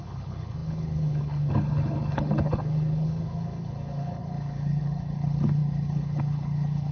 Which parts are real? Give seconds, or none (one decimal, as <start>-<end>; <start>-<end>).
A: none